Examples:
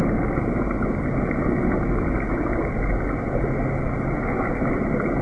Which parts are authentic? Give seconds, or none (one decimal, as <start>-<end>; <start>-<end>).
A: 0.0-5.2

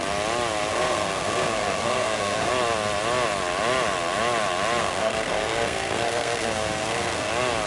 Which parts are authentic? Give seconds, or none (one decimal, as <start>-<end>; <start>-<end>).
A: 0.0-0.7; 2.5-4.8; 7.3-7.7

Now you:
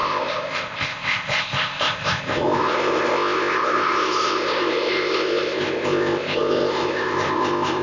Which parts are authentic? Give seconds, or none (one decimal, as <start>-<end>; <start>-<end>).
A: none

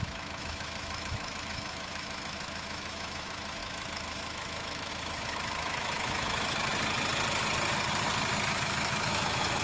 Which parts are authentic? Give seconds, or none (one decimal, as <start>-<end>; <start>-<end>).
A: 6.7-8.4